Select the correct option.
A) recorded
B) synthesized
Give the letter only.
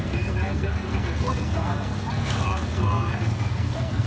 B